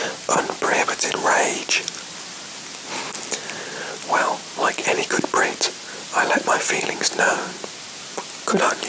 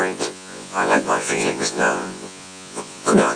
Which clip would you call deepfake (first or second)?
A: second